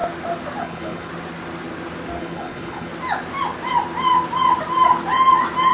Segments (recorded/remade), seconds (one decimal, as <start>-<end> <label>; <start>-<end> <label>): 0.0-0.6 recorded; 0.6-1.1 remade; 1.1-2.2 recorded; 2.2-2.9 remade; 2.9-5.7 recorded